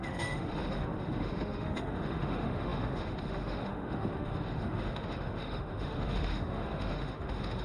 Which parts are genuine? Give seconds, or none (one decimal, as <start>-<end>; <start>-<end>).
none

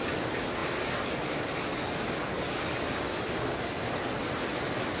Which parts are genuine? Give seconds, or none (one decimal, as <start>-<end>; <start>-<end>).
0.0-5.0

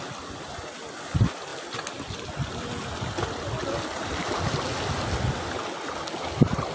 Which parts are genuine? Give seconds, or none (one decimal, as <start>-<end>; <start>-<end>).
0.0-6.7

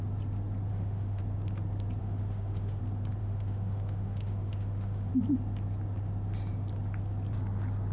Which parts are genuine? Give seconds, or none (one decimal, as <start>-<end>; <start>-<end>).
0.0-0.7; 1.2-2.0; 2.8-3.2; 5.1-7.9

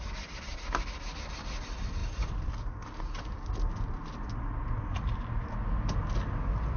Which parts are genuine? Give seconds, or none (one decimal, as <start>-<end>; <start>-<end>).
0.0-6.8

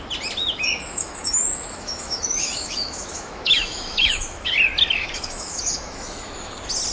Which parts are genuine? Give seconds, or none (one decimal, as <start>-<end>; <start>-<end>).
0.0-0.4; 4.5-5.0; 6.5-6.9